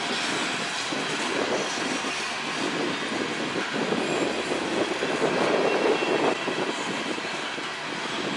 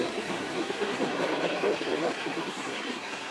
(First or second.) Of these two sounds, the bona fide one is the first